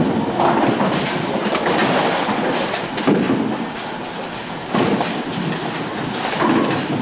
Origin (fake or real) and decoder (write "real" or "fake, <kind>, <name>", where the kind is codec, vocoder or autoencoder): real